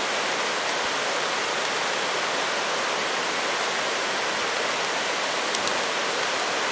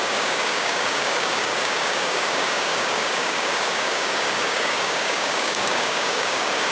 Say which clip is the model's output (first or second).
second